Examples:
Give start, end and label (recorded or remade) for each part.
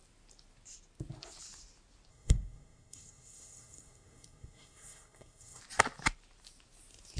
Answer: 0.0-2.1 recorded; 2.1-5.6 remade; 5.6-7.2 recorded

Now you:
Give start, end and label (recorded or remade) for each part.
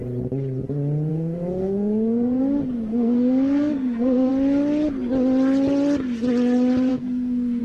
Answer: 0.0-1.1 recorded; 1.1-2.4 remade; 2.4-2.9 recorded; 2.9-4.3 remade; 4.3-6.9 recorded; 6.9-7.6 remade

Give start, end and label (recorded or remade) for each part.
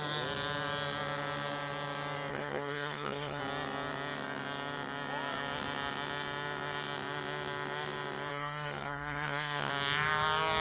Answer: 0.0-2.3 recorded; 2.3-3.4 remade; 3.4-8.3 recorded; 8.3-9.7 remade; 9.7-10.6 recorded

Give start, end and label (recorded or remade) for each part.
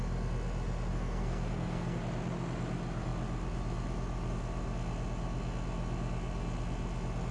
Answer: 0.0-0.9 recorded; 0.9-2.0 remade; 2.0-7.3 recorded